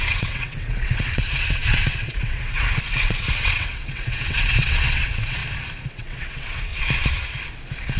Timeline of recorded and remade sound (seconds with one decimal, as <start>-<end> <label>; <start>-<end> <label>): 0.0-5.4 remade; 5.4-5.9 recorded; 5.9-6.7 remade; 6.7-8.0 recorded